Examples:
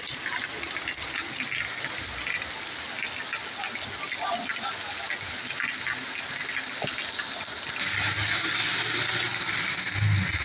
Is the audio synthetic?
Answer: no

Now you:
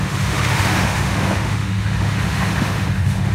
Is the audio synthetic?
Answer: yes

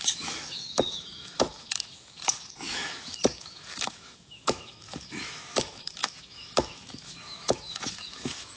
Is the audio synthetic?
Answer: yes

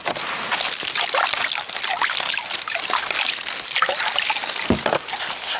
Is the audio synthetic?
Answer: no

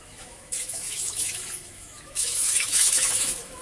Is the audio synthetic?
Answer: yes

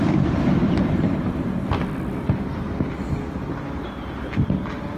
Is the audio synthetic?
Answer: no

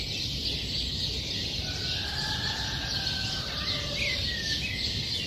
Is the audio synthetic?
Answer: no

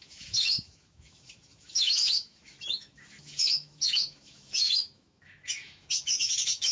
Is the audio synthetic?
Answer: yes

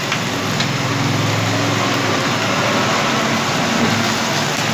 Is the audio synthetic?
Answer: no